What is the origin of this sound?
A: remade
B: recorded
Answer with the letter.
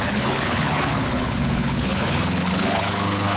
A